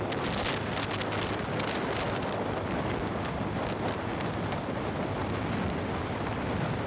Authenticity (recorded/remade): recorded